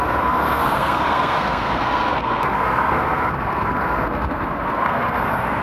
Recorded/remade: remade